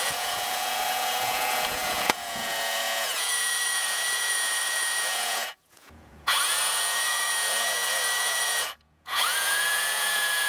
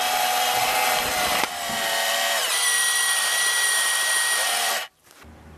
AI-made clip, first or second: first